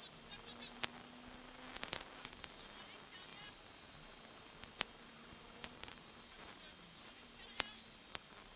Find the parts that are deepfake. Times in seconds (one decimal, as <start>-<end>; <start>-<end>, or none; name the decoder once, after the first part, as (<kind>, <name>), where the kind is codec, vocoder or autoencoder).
3.3-6.6 (vocoder, BigVGAN v2)